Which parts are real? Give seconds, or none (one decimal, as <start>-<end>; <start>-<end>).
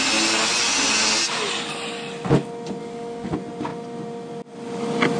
0.0-2.8; 3.3-5.2